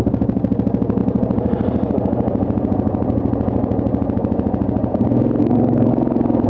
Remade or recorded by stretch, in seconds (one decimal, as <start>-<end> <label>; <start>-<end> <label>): 0.0-5.4 recorded; 5.4-5.9 remade; 5.9-6.5 recorded